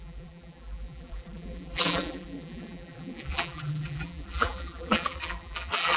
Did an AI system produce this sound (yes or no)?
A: yes